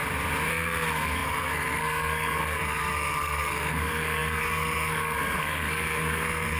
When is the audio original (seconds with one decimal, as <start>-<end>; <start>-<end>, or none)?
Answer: 0.0-0.5